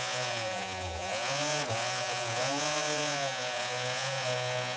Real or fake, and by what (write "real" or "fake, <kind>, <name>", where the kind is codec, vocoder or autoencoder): fake, vocoder, Vocos